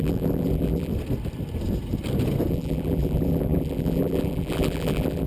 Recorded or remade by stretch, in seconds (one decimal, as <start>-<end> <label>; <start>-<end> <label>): 0.0-0.9 remade; 0.9-2.5 recorded; 2.5-5.3 remade